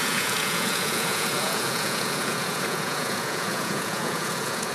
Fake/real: fake